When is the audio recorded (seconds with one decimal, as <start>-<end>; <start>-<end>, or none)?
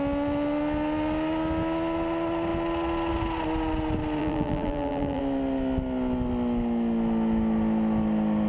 0.0-4.2; 5.2-8.5